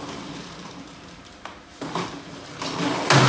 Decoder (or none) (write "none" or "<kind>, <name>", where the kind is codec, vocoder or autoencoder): vocoder, BigVGAN v2